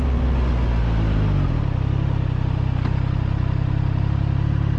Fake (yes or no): no